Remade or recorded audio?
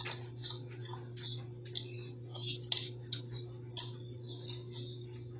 recorded